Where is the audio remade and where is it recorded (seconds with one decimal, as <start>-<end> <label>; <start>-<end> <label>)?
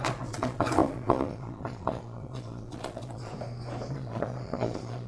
0.0-3.3 remade; 3.3-3.9 recorded; 3.9-5.1 remade